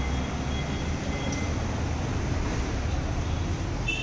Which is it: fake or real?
real